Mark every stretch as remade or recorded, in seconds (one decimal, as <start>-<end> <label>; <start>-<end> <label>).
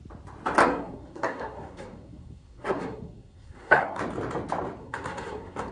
0.0-0.6 recorded; 0.6-4.0 remade; 4.0-4.8 recorded; 4.8-5.7 remade